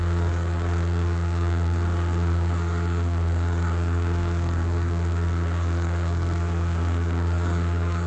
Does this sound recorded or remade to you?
remade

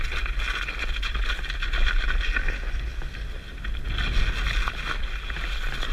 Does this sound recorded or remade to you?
recorded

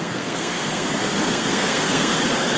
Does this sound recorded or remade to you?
remade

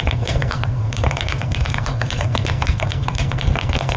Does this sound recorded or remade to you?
remade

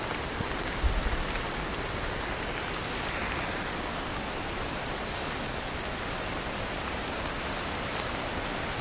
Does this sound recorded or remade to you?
recorded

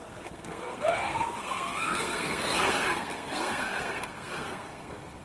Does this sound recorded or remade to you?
remade